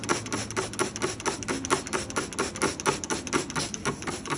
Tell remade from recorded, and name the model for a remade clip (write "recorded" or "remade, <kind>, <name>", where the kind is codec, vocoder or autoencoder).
recorded